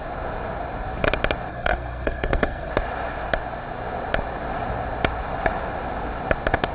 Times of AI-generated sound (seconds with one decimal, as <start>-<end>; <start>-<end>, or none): 1.5-2.7